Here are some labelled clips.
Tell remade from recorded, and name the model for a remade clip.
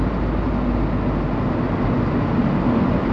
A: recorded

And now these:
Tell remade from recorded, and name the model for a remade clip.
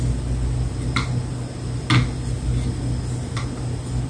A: recorded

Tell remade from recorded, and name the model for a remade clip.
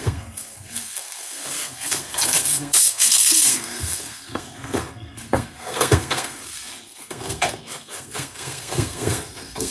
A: remade, codec, SNAC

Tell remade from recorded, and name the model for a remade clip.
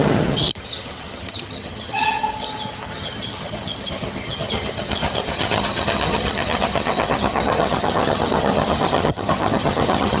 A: remade, vocoder, HiFi-GAN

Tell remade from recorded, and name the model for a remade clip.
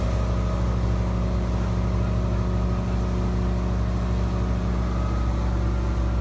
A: recorded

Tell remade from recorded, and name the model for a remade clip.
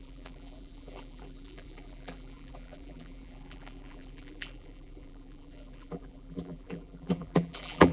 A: remade, vocoder, BigVGAN v2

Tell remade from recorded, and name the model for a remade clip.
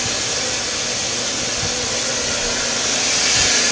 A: recorded